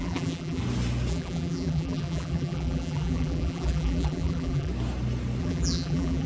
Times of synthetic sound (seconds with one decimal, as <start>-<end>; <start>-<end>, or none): 0.0-0.6; 1.1-4.7; 5.4-6.3